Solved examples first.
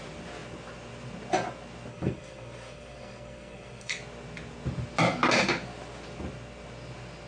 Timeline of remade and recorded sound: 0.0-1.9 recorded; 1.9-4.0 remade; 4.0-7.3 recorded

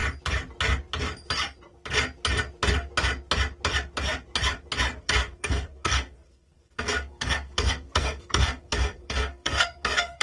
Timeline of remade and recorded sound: 0.0-5.0 recorded; 5.0-10.2 remade